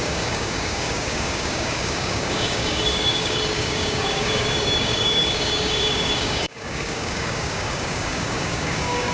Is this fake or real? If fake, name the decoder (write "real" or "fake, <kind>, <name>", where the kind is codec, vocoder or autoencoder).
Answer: fake, codec, DAC